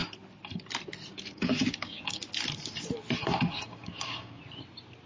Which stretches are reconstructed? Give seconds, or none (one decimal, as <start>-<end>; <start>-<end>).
1.3-2.2; 3.2-4.4

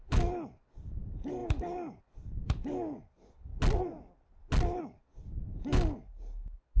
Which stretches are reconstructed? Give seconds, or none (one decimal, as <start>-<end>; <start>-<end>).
0.0-3.5; 4.8-6.8

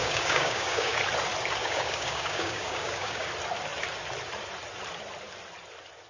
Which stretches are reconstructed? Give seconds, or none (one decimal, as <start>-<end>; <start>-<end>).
0.0-1.0; 1.6-3.3